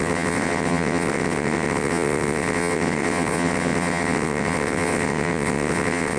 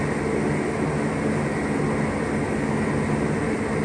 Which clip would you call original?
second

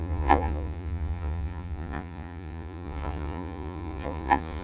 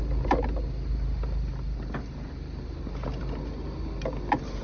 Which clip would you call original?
second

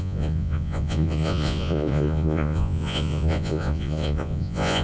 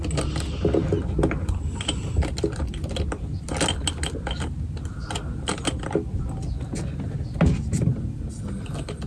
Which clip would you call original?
second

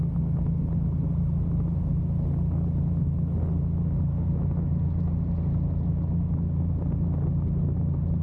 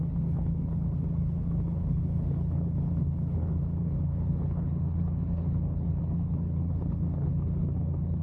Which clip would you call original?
first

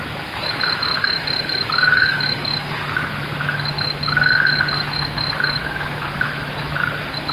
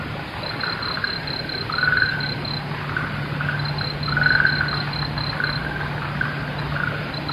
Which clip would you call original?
second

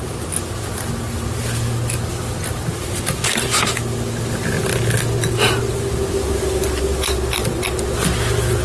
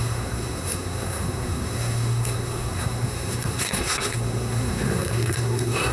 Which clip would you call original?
first